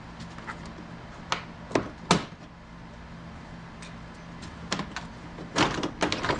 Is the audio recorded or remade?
recorded